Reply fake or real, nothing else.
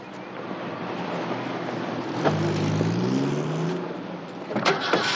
real